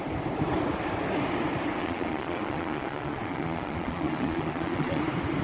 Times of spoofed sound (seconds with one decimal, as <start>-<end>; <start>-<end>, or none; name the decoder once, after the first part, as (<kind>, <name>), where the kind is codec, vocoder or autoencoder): 1.8-5.0 (vocoder, Vocos)